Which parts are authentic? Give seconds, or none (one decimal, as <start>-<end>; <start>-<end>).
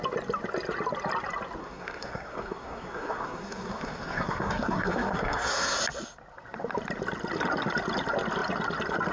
0.0-1.6; 5.8-9.1